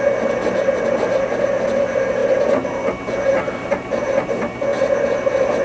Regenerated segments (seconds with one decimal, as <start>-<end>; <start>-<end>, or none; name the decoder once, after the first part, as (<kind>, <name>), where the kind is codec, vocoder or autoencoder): none